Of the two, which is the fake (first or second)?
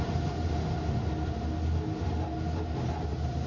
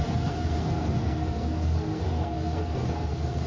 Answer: second